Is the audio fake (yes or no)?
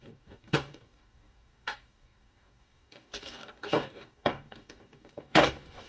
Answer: yes